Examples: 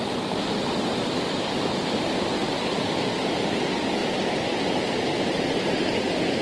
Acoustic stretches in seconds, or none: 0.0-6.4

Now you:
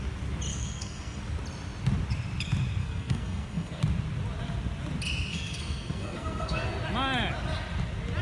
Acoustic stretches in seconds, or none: 0.0-0.5; 1.2-2.8; 3.8-5.3; 6.7-8.2

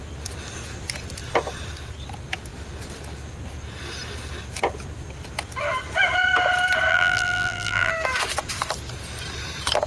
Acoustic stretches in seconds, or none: 0.0-6.9; 7.9-9.9

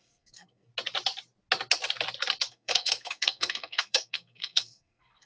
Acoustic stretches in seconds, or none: 0.7-2.5